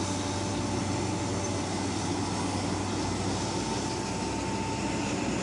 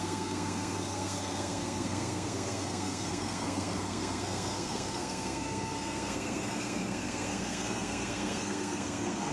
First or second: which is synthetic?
second